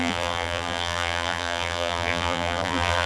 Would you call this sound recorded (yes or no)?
no